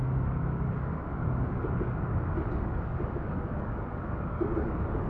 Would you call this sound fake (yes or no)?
yes